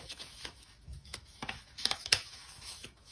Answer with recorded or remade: remade